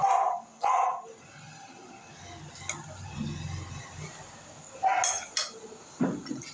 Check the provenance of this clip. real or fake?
real